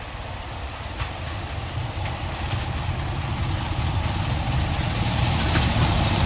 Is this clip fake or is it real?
fake